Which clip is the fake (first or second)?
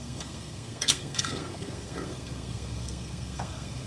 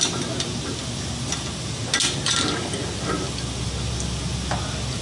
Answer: first